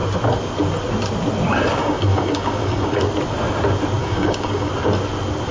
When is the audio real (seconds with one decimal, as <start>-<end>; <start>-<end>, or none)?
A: 0.0-1.8; 3.0-4.0; 4.7-5.5